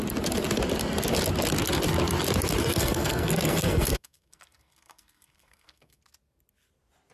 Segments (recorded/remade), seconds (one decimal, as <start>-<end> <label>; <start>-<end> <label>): 0.0-2.6 recorded; 2.6-6.0 remade; 6.0-7.1 recorded